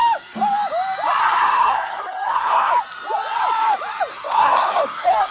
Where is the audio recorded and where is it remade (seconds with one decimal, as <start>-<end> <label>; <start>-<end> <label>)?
0.0-1.2 recorded; 1.2-2.7 remade; 2.7-4.1 recorded; 4.1-5.3 remade